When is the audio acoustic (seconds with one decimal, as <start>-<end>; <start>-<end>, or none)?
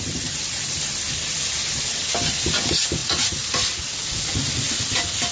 0.0-5.3